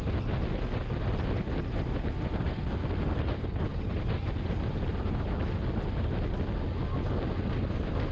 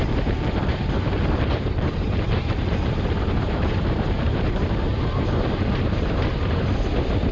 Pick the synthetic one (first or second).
second